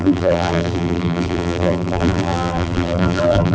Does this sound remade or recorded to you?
remade